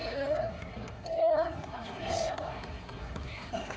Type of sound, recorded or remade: remade